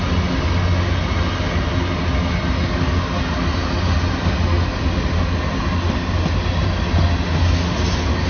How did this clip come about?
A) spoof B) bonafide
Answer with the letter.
B